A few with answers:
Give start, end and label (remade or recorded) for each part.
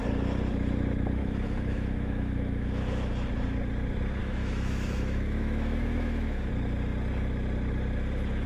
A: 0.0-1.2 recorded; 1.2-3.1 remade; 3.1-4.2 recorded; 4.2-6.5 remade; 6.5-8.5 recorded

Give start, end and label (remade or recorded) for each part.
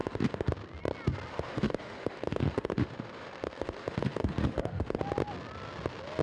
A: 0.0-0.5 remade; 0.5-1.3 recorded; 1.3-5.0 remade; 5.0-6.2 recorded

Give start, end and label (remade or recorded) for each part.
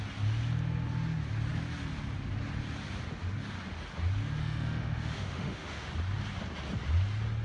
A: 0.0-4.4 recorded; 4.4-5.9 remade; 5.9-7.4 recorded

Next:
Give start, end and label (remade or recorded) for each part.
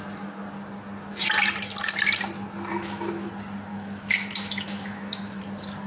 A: 0.0-2.7 recorded; 2.7-3.3 remade; 3.3-3.7 recorded; 3.7-5.4 remade; 5.4-5.9 recorded